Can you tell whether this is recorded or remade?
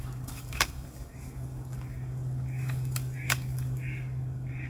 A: remade